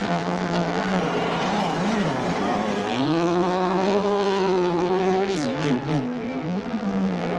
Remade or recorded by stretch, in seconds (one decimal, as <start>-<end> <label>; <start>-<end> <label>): 0.0-1.0 remade; 1.0-2.8 recorded; 2.8-7.4 remade